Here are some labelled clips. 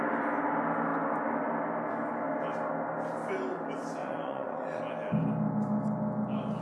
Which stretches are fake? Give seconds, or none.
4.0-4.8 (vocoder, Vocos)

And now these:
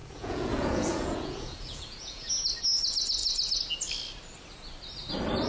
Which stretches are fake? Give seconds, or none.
0.0-2.3 (vocoder, Vocos)

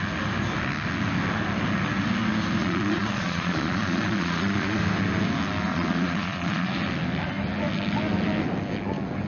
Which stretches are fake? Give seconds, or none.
2.6-4.8 (vocoder, Vocos); 5.7-6.7

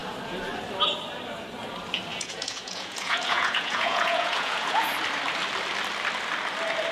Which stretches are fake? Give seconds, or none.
2.1-4.9 (vocoder, Vocos)